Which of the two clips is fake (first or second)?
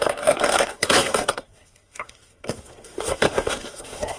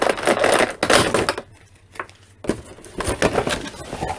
first